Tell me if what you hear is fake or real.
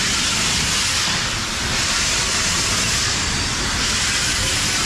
real